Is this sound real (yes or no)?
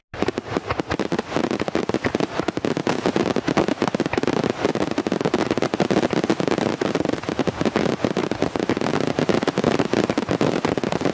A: yes